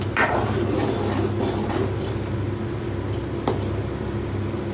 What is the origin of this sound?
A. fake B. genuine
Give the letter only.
B